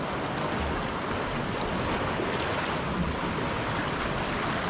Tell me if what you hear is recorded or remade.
recorded